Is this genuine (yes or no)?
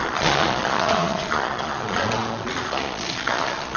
no